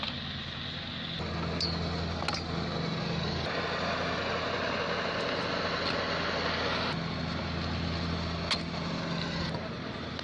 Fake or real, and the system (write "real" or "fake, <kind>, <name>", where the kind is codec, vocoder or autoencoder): real